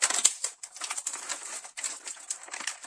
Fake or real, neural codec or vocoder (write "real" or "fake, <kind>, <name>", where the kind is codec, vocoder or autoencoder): fake, vocoder, BigVGAN v2